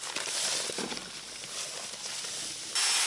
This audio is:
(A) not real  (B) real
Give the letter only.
B